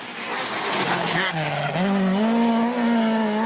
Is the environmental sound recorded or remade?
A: recorded